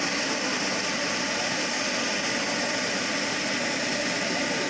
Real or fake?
real